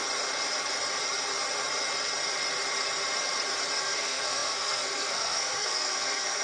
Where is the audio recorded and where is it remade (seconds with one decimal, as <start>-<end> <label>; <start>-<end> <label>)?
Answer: 0.0-3.8 recorded; 3.8-6.4 remade